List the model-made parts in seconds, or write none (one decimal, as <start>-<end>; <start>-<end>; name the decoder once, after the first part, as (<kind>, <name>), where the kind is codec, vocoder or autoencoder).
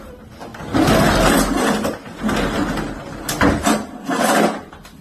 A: none